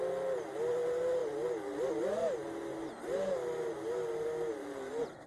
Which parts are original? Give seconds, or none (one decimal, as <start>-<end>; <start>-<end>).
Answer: 0.0-2.7; 3.3-5.3